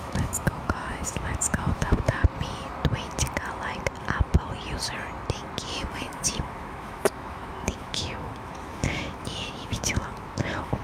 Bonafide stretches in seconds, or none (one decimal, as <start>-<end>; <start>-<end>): 2.2-6.0